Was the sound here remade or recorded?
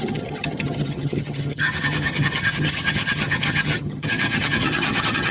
remade